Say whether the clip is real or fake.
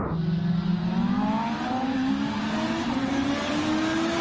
real